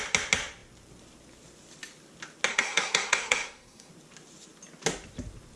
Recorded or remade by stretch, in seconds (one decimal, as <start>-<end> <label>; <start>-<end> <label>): 0.0-2.5 recorded; 2.5-3.9 remade; 3.9-5.6 recorded